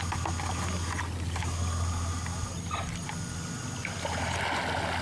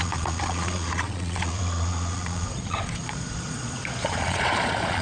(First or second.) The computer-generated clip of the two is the second